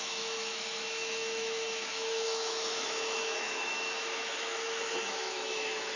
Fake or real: fake